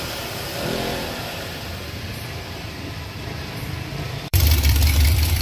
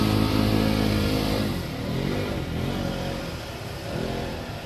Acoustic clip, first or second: second